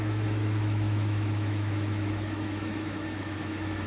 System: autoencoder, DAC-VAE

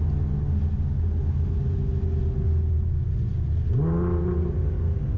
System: none